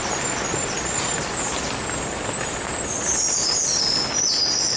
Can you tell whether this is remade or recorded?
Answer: recorded